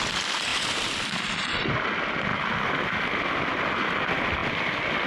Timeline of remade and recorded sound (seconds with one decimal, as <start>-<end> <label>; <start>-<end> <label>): 0.0-5.1 recorded